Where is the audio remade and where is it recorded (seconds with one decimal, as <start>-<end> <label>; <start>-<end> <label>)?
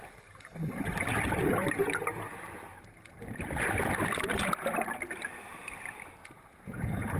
0.0-6.2 recorded; 6.2-7.2 remade